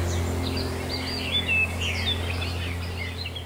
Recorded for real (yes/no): yes